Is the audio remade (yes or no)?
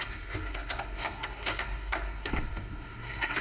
yes